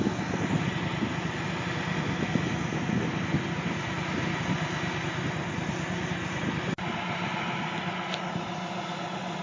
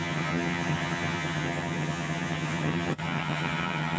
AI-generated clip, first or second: second